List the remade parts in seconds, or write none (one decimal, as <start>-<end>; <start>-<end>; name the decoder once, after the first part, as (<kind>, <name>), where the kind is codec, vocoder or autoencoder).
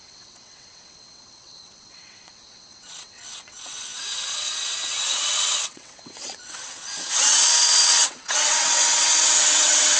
0.0-10.0 (vocoder, WaveNeXt)